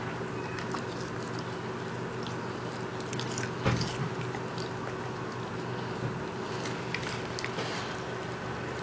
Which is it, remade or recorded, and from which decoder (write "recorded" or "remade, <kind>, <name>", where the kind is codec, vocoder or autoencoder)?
recorded